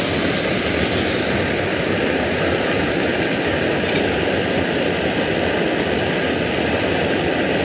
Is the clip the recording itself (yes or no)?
yes